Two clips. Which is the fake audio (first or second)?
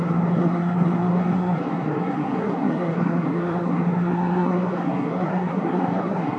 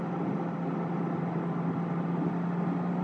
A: first